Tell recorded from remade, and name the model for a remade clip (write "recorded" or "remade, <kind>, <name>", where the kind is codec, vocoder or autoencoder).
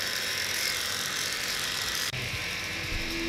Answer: remade, vocoder, BigVGAN v2